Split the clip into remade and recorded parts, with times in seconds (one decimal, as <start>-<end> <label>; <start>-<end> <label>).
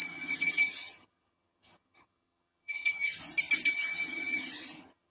0.0-3.2 remade; 3.2-3.7 recorded; 3.7-5.1 remade